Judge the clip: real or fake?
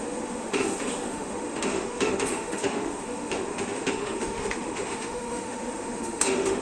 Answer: fake